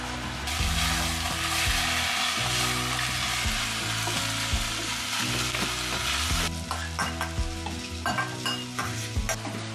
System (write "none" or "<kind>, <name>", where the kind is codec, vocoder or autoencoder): none